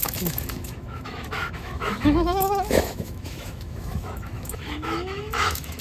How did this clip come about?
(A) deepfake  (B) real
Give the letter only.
A